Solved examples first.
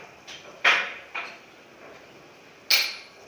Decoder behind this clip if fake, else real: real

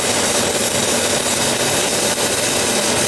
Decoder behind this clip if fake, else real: real